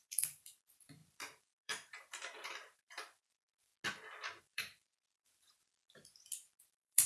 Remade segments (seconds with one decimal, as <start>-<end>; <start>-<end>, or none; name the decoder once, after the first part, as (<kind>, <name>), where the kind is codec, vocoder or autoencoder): 0.0-3.7 (vocoder, BigVGAN v2); 4.4-5.7; 6.6-7.1